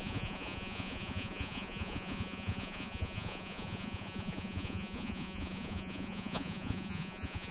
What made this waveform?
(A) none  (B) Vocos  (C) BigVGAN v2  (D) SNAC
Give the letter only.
B